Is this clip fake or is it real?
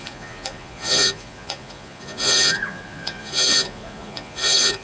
fake